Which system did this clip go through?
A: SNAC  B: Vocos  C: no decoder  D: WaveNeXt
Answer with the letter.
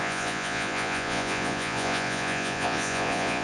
B